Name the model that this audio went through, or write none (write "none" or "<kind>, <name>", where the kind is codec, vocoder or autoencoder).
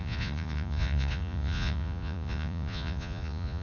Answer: vocoder, Vocos